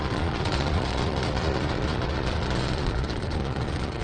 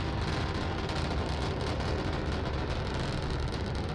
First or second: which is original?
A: second